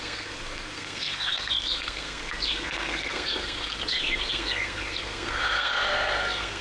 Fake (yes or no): yes